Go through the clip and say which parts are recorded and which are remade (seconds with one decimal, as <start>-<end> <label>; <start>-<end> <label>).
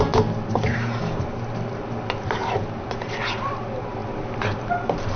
0.0-5.2 recorded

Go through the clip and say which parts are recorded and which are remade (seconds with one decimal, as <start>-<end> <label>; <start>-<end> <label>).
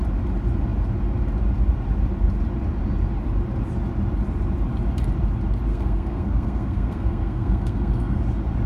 0.0-5.7 recorded; 5.7-8.2 remade; 8.2-8.7 recorded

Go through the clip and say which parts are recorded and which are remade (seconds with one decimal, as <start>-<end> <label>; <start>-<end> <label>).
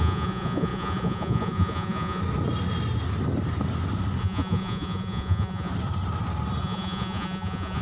0.0-2.2 remade; 2.2-4.2 recorded; 4.2-5.7 remade; 5.7-6.6 recorded; 6.6-7.8 remade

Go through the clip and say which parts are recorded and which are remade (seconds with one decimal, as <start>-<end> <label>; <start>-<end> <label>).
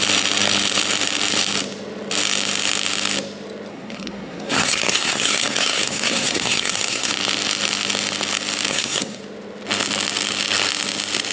0.0-3.7 recorded; 3.7-7.1 remade; 7.1-8.7 recorded; 8.7-9.2 remade; 9.2-11.3 recorded